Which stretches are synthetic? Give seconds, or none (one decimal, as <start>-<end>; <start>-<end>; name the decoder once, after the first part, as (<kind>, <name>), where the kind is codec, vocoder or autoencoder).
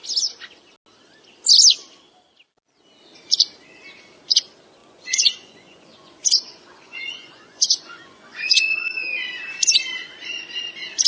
4.8-8.9 (vocoder, Vocos)